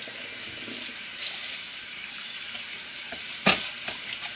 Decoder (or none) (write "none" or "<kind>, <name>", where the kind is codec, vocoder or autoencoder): none